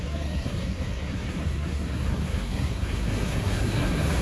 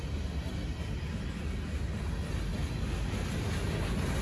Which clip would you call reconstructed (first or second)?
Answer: first